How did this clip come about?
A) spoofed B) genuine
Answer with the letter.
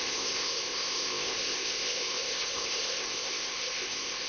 A